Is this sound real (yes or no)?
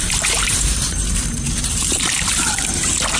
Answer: no